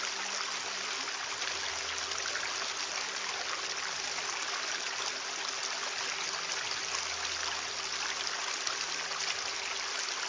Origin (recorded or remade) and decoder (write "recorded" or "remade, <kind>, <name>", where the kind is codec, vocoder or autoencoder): recorded